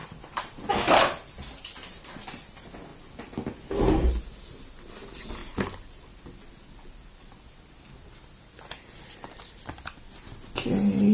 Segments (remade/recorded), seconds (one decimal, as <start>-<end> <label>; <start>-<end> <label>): 0.0-0.6 remade; 0.6-2.9 recorded; 2.9-3.7 remade; 3.7-11.1 recorded